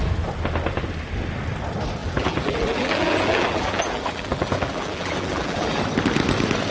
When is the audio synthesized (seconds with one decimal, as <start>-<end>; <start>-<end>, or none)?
2.0-5.8